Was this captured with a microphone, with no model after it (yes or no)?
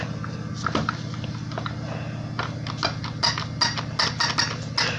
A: yes